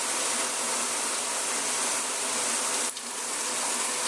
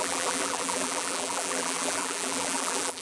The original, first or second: first